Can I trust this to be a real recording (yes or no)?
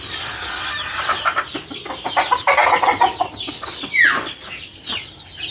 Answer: yes